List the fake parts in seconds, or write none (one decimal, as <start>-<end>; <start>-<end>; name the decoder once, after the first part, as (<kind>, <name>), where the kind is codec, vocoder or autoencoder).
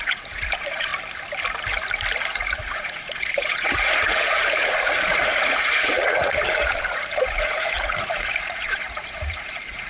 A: 0.0-0.9 (vocoder, Vocos); 2.3-9.9